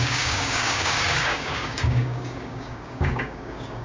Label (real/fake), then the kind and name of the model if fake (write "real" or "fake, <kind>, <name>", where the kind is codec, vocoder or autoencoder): fake, codec, DAC